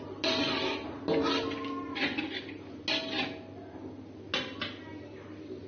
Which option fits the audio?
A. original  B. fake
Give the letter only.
A